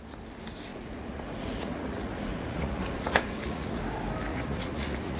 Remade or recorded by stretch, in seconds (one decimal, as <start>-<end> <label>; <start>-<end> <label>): 0.0-0.7 recorded; 0.7-3.8 remade; 3.8-4.3 recorded; 4.3-5.2 remade